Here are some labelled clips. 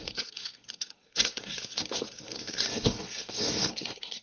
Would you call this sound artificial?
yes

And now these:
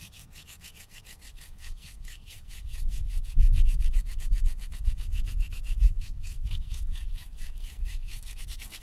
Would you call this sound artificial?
yes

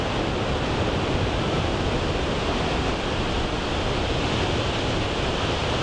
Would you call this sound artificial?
no